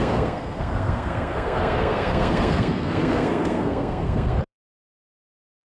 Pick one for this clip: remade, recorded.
remade